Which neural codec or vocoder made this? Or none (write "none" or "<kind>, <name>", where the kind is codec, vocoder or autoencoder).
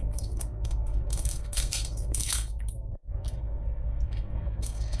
codec, SNAC